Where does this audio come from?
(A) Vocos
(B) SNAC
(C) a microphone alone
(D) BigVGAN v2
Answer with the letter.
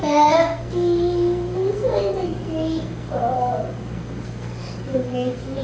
B